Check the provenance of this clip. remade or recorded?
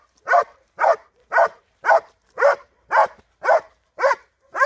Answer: remade